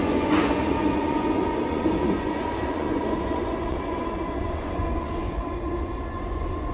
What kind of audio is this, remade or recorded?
remade